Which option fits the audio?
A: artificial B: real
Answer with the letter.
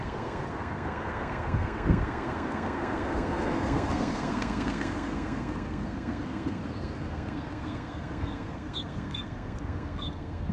A